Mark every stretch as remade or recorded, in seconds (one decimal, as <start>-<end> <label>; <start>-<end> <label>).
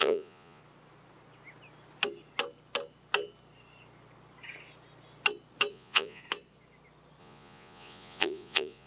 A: 0.0-0.6 remade; 0.6-5.7 recorded; 5.7-6.2 remade; 6.2-7.2 recorded; 7.2-8.9 remade